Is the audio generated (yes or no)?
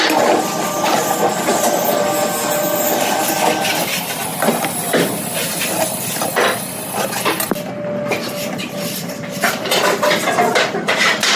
no